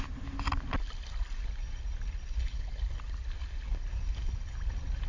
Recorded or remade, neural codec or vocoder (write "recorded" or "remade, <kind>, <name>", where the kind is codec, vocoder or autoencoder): recorded